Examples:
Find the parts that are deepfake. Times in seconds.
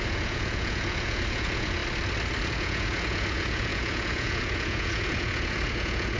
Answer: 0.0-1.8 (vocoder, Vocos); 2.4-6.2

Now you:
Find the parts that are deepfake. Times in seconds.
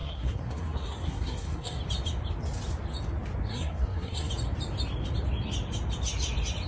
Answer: 0.0-1.8 (codec, SNAC); 3.5-4.3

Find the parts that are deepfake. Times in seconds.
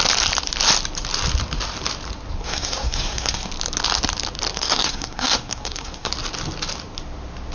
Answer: 2.4-3.5 (codec, SNAC); 4.5-6.1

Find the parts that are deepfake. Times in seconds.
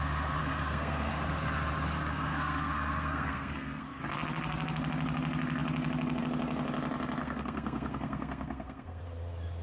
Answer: 0.4-1.1 (codec, SNAC); 2.1-4.0; 7.2-9.0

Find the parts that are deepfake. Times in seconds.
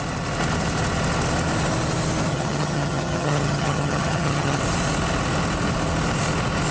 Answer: 2.3-4.6 (vocoder, HiFi-GAN)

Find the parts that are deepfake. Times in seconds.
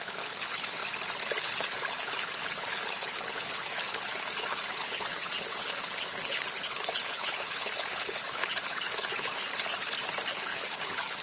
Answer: 0.0-0.8 (codec, HILCodec); 1.4-9.5; 10.4-11.2